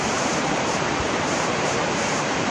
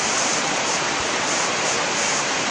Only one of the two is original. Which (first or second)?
second